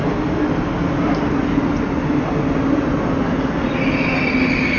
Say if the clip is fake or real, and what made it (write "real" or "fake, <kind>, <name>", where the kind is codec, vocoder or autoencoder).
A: real